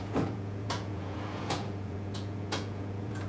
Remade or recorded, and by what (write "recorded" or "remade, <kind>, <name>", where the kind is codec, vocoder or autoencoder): remade, vocoder, Vocos